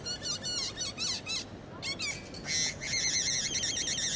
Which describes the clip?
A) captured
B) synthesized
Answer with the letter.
A